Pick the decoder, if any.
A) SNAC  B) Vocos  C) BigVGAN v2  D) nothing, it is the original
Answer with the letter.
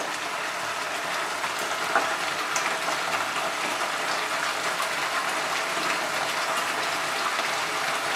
D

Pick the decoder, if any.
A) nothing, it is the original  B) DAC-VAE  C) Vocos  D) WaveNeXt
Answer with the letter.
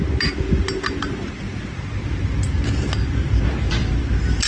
A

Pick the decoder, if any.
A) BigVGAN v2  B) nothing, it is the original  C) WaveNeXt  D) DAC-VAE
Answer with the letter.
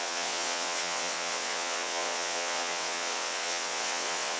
C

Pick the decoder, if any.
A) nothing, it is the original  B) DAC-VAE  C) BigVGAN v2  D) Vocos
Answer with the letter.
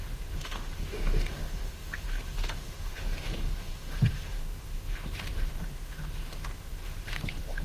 B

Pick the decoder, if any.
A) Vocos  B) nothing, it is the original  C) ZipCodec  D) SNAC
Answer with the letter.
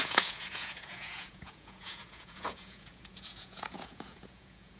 A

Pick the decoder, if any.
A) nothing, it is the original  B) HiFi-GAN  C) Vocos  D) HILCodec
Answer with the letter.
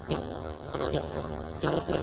B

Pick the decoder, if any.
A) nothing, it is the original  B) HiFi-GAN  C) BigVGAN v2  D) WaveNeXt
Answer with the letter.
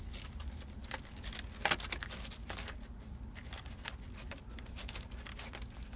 A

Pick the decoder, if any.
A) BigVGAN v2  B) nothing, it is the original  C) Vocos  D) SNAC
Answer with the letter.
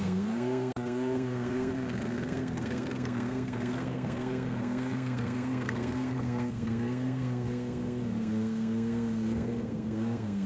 D